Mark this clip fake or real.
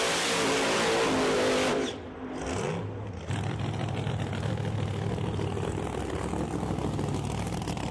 real